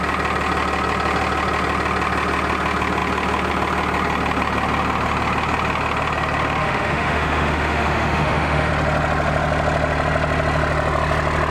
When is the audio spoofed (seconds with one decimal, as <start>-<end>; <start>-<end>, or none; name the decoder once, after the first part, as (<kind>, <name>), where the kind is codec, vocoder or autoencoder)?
6.6-8.7 (autoencoder, DAC-VAE)